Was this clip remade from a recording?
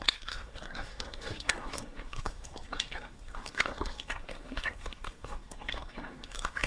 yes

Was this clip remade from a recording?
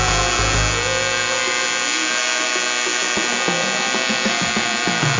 no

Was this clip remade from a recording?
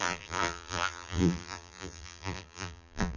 yes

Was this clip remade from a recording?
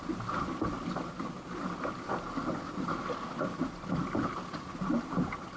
no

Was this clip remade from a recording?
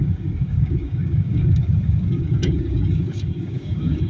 yes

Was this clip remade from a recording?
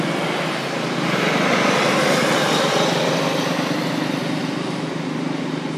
no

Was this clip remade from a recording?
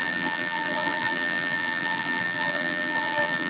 yes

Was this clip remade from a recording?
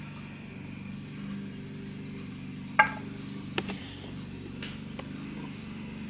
no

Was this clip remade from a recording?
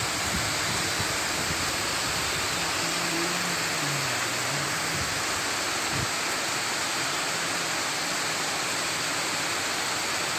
no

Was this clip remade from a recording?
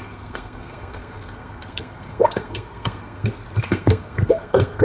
yes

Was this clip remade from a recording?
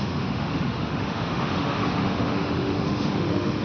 yes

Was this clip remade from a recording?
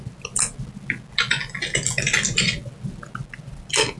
no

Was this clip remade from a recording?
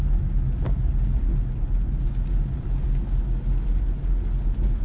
no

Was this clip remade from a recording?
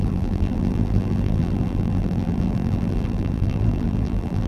yes